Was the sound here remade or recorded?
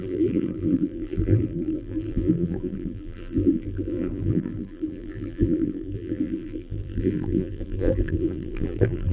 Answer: remade